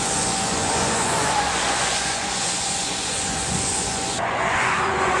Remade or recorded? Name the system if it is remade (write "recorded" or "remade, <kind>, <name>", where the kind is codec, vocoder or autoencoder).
remade, vocoder, Vocos